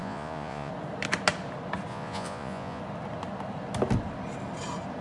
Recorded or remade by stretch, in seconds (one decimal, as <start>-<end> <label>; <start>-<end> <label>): 0.0-0.7 remade; 0.7-1.9 recorded; 1.9-2.8 remade; 2.8-5.0 recorded